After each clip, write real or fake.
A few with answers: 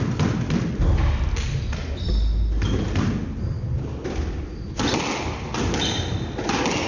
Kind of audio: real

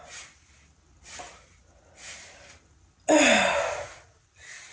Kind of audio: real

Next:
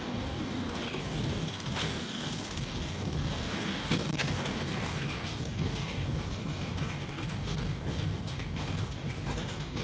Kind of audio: fake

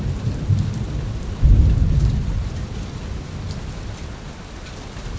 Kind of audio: fake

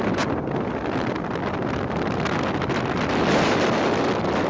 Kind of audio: real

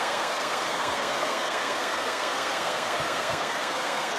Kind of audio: fake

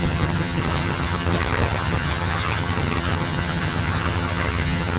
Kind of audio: fake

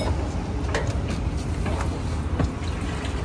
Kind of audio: real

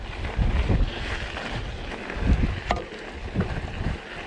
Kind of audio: real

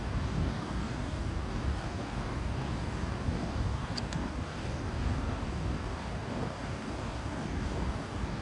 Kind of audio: fake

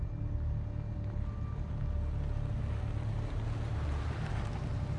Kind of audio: real